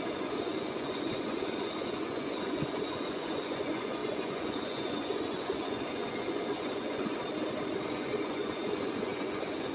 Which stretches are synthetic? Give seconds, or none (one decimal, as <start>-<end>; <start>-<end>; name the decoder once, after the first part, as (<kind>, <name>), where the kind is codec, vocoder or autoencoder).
0.0-7.2 (vocoder, Vocos); 7.9-9.7